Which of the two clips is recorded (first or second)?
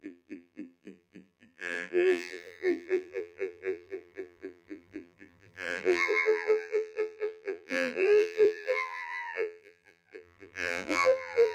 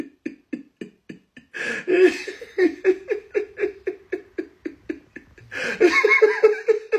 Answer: second